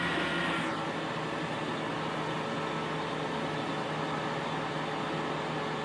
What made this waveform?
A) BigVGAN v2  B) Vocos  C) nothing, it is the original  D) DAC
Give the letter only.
C